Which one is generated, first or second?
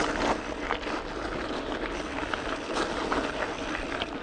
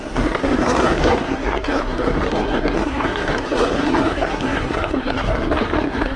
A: second